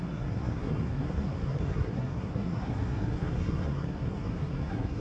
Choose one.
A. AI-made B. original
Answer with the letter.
A